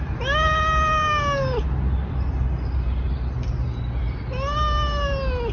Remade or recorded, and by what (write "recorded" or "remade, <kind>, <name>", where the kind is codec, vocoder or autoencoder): recorded